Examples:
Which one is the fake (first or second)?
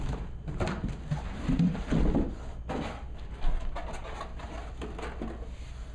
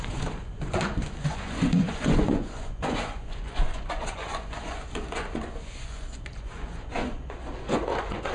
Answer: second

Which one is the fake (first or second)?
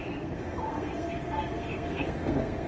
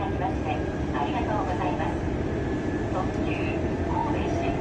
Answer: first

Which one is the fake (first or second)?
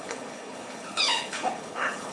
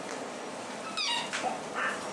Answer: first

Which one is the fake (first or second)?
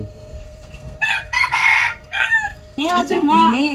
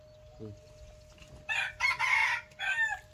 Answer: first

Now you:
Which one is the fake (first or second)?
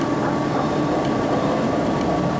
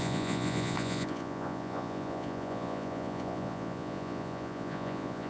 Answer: second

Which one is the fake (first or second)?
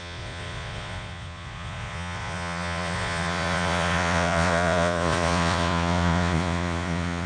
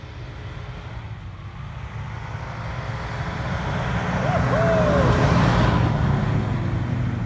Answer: first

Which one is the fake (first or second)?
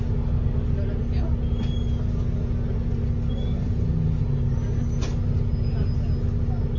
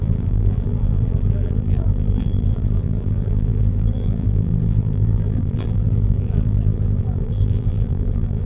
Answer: second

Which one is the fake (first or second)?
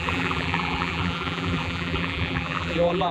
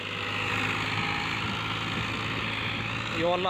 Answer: first